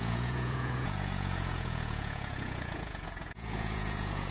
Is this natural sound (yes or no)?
no